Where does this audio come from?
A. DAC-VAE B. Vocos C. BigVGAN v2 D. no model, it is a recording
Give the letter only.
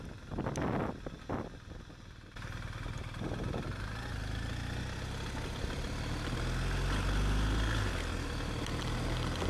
D